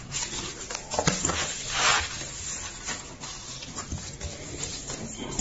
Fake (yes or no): no